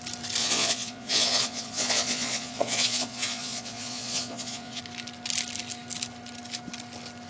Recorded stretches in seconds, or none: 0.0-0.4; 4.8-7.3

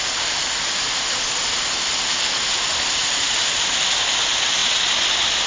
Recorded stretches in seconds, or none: 0.0-5.5

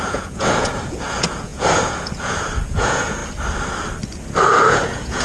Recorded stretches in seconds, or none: 3.2-4.7

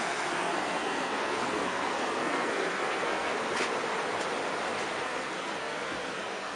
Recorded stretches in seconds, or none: 3.3-5.0

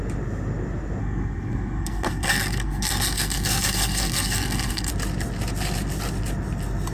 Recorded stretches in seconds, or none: 0.0-1.0; 4.9-6.9

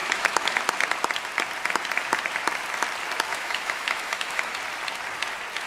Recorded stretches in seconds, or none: 0.6-3.3; 4.6-5.7

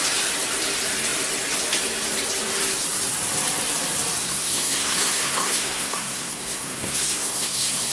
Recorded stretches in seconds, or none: 0.0-4.2